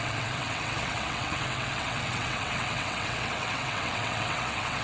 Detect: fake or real fake